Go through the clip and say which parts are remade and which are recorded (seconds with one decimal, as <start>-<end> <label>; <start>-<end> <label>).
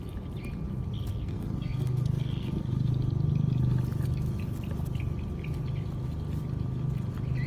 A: 0.0-1.2 recorded; 1.2-2.9 remade; 2.9-7.5 recorded